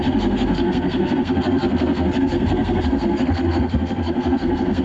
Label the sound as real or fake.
fake